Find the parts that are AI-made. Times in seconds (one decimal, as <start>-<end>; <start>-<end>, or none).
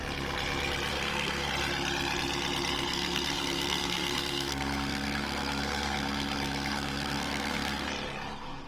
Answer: 0.9-1.5; 2.9-7.9